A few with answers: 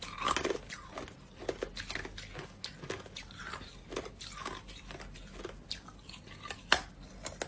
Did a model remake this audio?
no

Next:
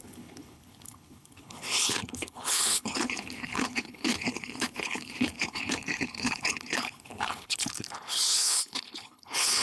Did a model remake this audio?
yes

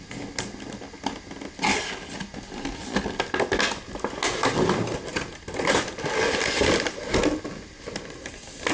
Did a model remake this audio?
no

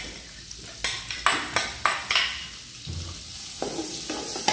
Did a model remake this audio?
no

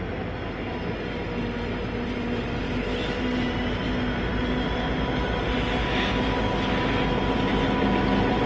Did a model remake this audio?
no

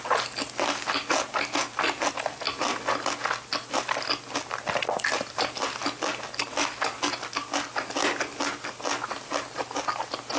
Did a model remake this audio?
no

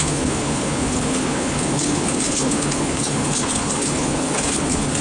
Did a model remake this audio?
yes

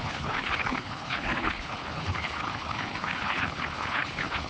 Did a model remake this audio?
yes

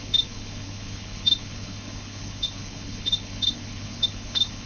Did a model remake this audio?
yes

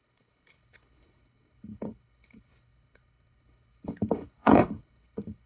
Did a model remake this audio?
yes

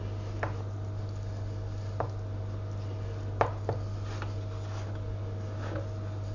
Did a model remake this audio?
no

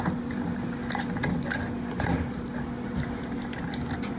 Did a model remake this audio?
no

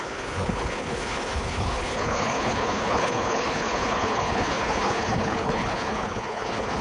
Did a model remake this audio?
yes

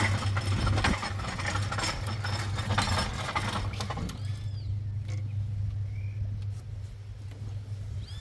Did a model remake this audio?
no